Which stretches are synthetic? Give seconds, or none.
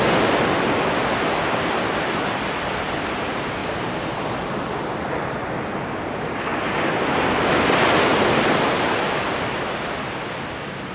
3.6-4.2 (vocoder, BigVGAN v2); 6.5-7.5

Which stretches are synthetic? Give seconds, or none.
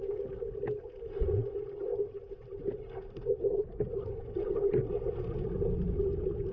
none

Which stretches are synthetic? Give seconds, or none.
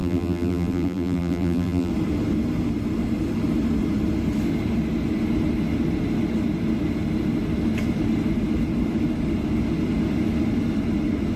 0.0-1.9 (vocoder, BigVGAN v2)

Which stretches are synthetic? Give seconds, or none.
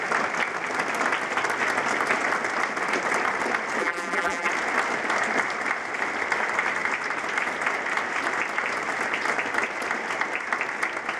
3.8-4.5 (vocoder, BigVGAN v2)